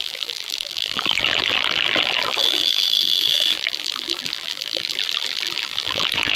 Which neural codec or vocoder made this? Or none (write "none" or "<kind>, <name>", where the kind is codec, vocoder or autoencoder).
vocoder, BigVGAN v2